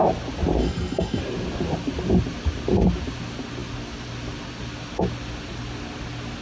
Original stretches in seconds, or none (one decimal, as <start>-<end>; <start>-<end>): 0.0-0.6; 1.2-6.4